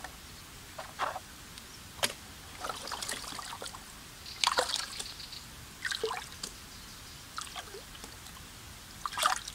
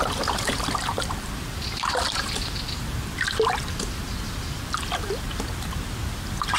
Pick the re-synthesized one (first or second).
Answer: second